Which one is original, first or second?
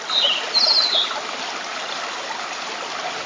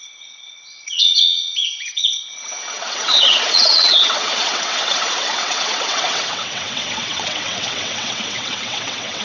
first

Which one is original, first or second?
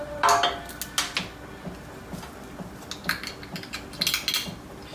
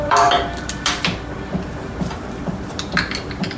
first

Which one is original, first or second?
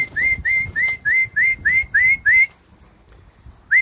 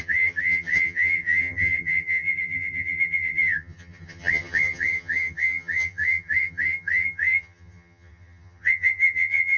first